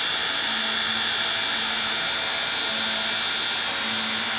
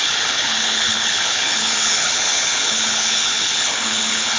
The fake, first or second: second